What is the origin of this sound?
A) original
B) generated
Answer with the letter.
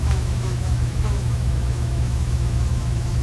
B